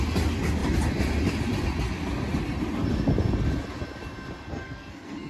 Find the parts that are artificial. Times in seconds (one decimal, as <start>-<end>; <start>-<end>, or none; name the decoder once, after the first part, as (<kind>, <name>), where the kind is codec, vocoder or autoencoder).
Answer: 4.5-5.3 (codec, SNAC)